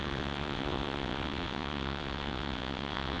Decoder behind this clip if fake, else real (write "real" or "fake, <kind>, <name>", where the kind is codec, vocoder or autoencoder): fake, vocoder, WaveNeXt